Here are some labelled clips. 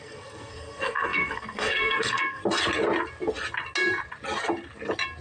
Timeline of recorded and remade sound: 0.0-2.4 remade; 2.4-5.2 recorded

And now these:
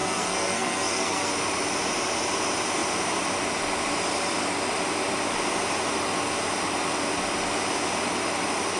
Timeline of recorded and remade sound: 0.0-1.3 remade; 1.3-8.8 recorded

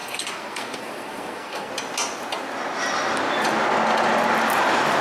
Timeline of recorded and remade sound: 0.0-1.7 remade; 1.7-5.0 recorded

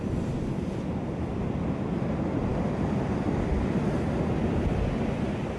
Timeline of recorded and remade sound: 0.0-5.6 recorded

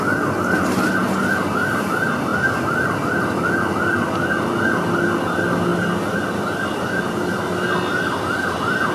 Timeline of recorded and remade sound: 0.0-8.9 recorded